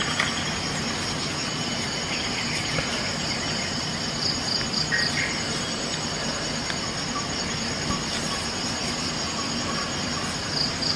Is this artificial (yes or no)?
no